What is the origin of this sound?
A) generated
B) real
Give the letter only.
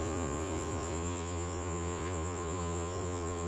A